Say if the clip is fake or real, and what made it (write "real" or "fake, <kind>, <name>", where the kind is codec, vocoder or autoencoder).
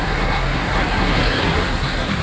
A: fake, codec, SNAC